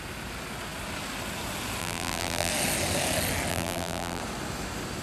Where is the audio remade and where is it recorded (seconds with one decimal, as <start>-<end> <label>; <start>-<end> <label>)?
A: 0.0-1.8 recorded; 1.8-2.5 remade; 2.5-3.5 recorded; 3.5-4.2 remade; 4.2-5.0 recorded